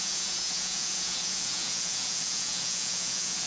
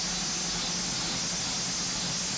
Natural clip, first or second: second